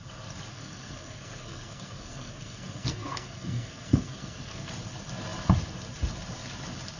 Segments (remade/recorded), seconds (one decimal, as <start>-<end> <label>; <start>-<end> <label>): 0.0-0.5 recorded; 0.5-4.7 remade; 4.7-7.0 recorded